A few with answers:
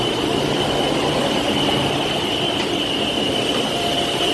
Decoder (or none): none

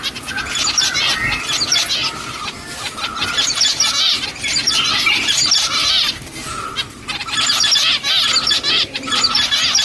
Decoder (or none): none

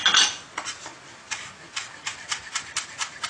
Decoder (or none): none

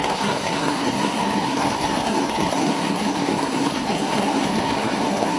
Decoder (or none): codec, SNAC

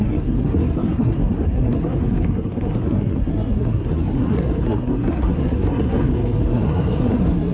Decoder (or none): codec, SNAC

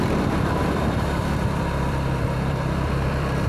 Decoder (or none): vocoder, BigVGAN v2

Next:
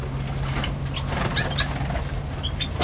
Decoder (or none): none